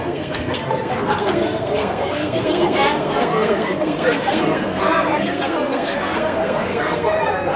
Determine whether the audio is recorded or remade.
remade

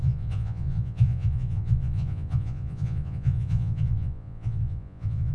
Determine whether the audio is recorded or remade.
remade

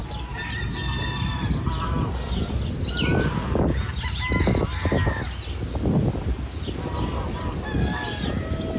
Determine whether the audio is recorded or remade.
recorded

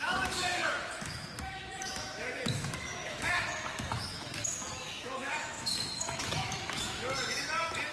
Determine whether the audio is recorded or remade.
remade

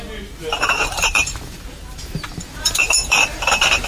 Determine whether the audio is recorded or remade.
remade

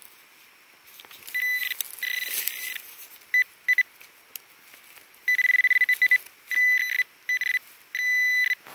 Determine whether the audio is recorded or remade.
recorded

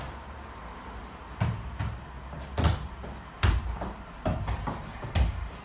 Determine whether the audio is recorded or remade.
remade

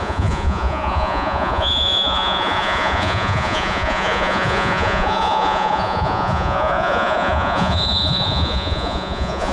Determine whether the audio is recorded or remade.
remade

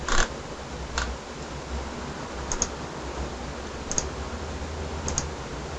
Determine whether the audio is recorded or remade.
recorded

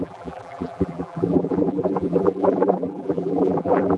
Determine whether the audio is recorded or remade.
remade